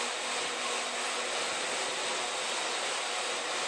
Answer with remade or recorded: recorded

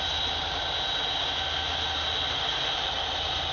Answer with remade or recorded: recorded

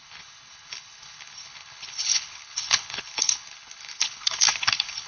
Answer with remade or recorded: remade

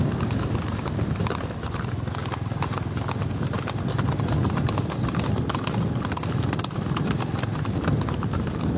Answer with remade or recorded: recorded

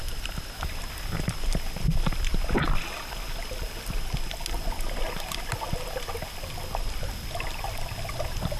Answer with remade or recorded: recorded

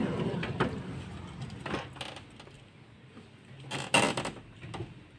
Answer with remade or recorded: recorded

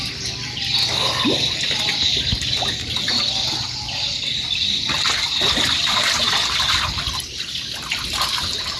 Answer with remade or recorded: recorded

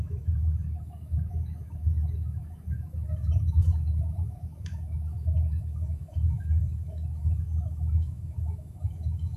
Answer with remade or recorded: remade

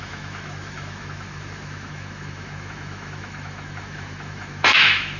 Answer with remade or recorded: remade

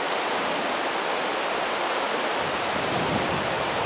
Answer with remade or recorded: recorded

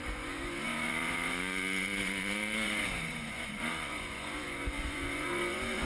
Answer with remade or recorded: remade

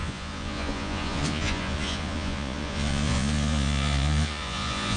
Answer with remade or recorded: remade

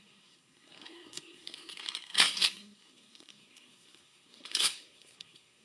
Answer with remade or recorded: remade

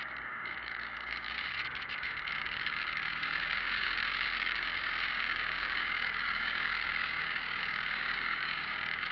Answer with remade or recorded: remade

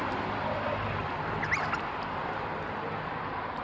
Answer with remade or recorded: recorded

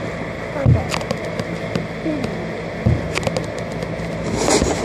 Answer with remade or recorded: recorded